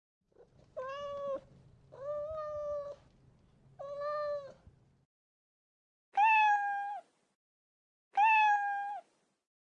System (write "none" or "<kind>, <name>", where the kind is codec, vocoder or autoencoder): none